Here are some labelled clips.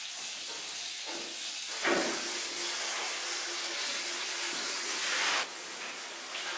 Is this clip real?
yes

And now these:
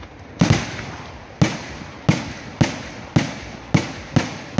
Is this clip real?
yes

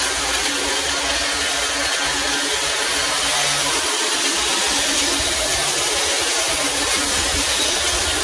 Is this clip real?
yes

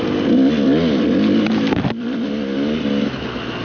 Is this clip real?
yes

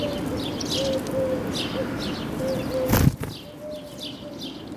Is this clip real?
yes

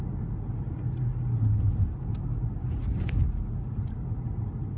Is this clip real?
yes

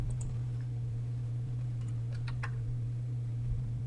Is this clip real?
no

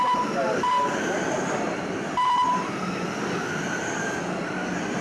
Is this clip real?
no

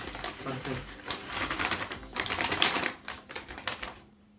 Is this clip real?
no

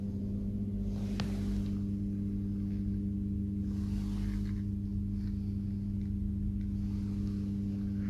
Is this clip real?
yes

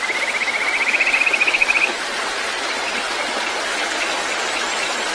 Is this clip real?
yes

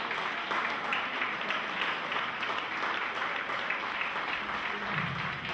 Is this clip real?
yes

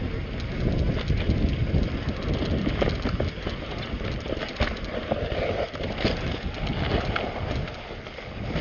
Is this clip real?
yes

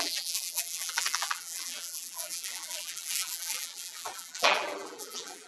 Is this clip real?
no